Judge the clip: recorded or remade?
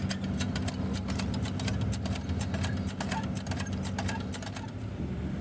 recorded